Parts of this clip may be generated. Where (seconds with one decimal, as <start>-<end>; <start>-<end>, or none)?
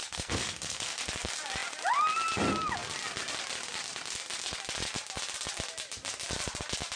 0.0-1.0